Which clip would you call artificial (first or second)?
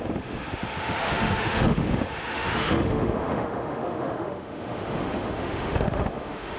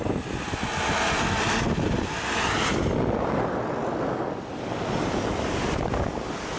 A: first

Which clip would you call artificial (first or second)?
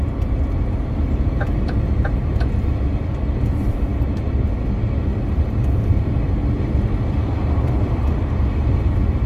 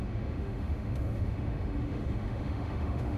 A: second